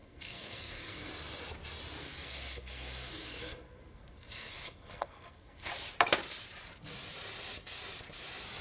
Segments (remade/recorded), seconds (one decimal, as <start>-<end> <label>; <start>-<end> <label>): 0.0-1.1 remade; 1.1-2.0 recorded; 2.0-5.7 remade; 5.7-8.6 recorded